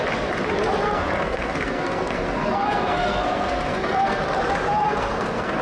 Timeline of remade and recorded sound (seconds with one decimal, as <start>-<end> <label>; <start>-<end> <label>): 0.0-0.8 recorded; 0.8-4.2 remade; 4.2-4.7 recorded; 4.7-5.6 remade